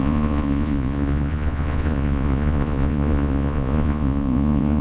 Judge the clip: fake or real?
fake